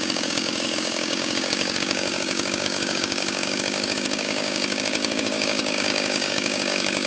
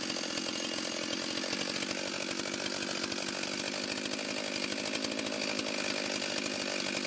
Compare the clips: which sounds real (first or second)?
second